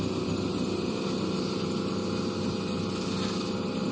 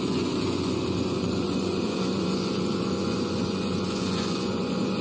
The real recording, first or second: first